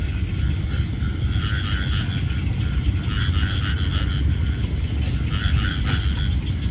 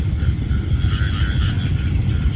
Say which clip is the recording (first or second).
first